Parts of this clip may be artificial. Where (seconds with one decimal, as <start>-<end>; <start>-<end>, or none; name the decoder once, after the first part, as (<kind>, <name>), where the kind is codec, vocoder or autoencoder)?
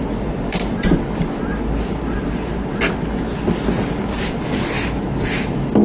none